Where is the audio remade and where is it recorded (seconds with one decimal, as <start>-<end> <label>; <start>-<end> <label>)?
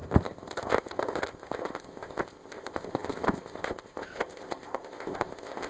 0.0-5.7 remade